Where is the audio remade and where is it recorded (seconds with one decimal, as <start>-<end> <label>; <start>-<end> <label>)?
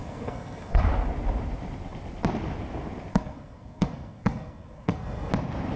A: 0.0-0.8 remade; 0.8-3.1 recorded; 3.1-5.3 remade; 5.3-5.8 recorded